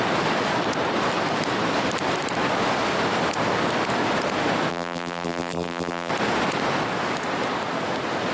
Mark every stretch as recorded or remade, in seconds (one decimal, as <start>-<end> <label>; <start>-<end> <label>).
0.0-4.7 recorded; 4.7-6.1 remade; 6.1-8.3 recorded